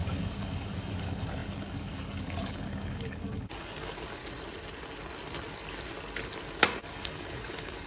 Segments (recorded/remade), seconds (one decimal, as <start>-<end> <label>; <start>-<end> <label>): 0.0-4.2 remade; 4.2-6.9 recorded; 6.9-7.9 remade